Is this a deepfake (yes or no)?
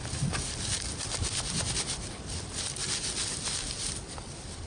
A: no